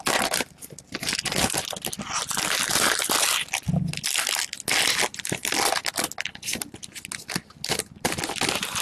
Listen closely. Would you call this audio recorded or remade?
recorded